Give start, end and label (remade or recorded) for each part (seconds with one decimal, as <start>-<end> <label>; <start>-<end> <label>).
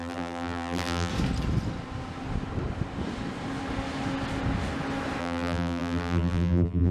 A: 0.0-1.1 remade; 1.1-5.2 recorded; 5.2-6.9 remade